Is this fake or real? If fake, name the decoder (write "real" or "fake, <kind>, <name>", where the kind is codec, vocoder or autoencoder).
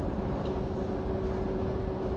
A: real